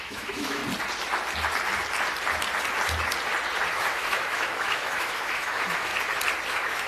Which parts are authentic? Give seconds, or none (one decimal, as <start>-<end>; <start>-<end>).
0.6-3.7; 5.9-6.5